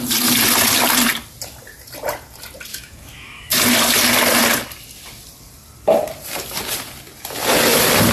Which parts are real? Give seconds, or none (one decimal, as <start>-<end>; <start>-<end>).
0.0-2.7; 3.6-8.1